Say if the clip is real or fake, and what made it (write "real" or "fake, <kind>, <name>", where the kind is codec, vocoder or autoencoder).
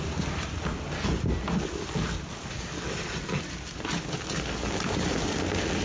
real